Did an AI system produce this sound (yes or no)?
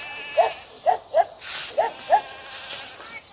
no